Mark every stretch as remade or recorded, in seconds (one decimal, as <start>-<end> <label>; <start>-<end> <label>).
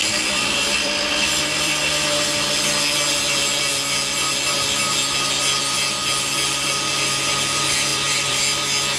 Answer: 0.0-2.5 remade; 2.5-7.9 recorded; 7.9-8.4 remade; 8.4-9.0 recorded